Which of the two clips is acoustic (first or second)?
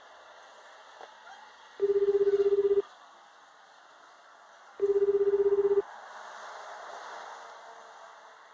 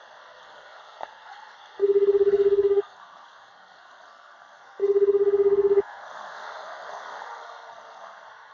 first